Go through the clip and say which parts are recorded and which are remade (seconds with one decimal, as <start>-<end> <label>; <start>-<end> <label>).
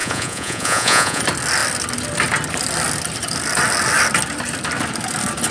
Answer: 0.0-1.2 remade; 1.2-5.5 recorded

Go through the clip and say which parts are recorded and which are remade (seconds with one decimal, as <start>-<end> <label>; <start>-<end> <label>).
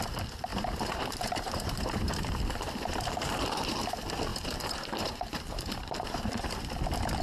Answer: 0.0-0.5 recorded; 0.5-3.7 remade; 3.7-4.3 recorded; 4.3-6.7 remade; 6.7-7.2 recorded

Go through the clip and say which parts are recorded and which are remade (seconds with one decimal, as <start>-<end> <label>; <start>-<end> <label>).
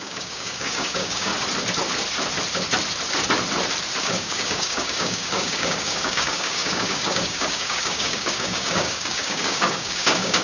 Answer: 0.0-1.3 remade; 1.3-4.0 recorded; 4.0-10.4 remade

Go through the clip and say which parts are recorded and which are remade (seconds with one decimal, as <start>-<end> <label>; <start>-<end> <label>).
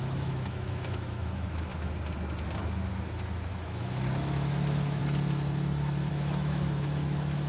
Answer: 0.0-1.7 remade; 1.7-3.5 recorded; 3.5-5.0 remade; 5.0-6.1 recorded; 6.1-7.5 remade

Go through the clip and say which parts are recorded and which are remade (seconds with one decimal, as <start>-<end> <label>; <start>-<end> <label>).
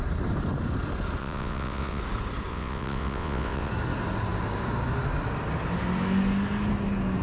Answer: 0.0-1.2 recorded; 1.2-2.0 remade; 2.0-2.5 recorded; 2.5-3.7 remade; 3.7-7.2 recorded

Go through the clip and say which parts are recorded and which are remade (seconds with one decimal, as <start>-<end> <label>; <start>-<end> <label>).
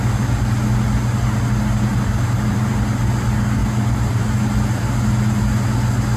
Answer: 0.0-1.9 recorded; 1.9-2.7 remade; 2.7-3.6 recorded; 3.6-4.4 remade; 4.4-6.2 recorded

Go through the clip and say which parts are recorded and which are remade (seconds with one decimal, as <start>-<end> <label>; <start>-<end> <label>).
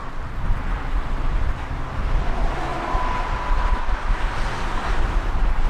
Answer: 0.0-2.7 recorded; 2.7-4.2 remade; 4.2-5.7 recorded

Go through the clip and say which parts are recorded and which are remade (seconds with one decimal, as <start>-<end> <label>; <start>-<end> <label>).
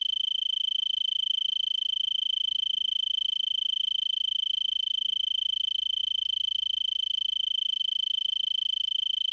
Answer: 0.0-9.3 recorded